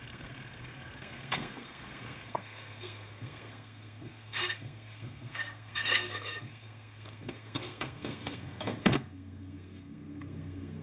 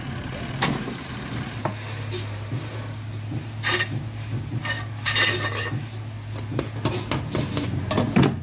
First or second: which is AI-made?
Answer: first